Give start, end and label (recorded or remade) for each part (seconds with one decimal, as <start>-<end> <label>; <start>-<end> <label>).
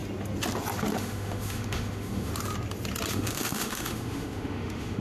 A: 0.0-1.0 recorded; 1.0-2.3 remade; 2.3-3.1 recorded; 3.1-5.0 remade